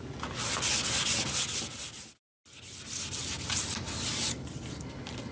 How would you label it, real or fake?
real